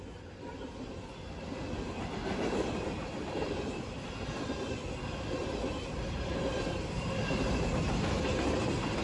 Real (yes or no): yes